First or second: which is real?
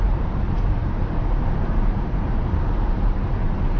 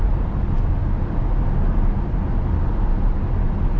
second